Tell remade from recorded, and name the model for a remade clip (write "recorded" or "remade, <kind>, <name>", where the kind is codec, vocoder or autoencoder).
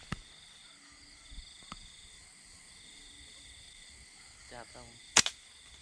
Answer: recorded